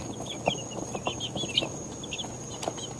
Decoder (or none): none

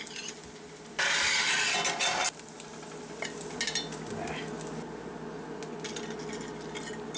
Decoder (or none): none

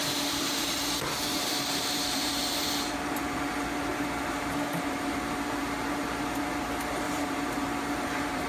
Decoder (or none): vocoder, BigVGAN v2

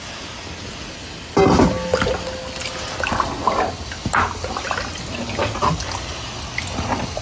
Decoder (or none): none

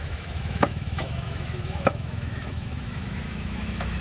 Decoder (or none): autoencoder, DAC-VAE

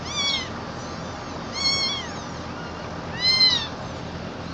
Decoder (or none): none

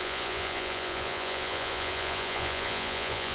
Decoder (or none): vocoder, Vocos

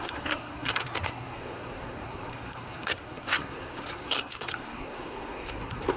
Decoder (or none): codec, SNAC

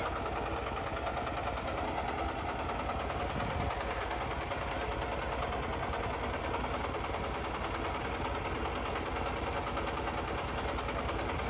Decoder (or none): none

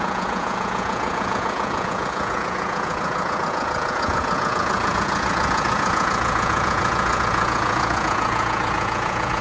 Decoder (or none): vocoder, Vocos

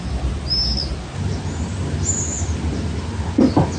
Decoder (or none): none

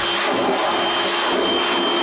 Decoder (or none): none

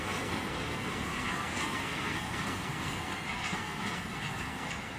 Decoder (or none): codec, SNAC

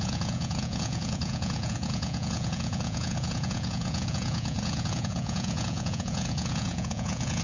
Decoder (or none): vocoder, Vocos